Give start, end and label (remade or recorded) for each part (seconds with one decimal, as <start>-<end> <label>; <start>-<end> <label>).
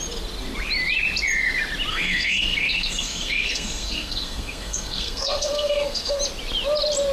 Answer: 0.0-1.9 recorded; 1.9-6.2 remade; 6.2-7.1 recorded